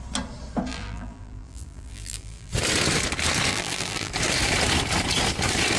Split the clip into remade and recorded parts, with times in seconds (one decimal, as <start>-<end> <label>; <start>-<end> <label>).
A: 0.0-0.7 recorded; 0.7-2.5 remade; 2.5-3.5 recorded; 3.5-4.1 remade; 4.1-5.8 recorded